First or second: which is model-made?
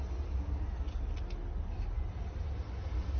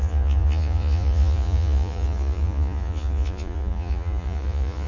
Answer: second